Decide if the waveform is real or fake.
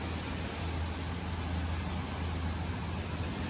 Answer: real